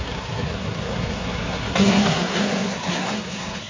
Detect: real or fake fake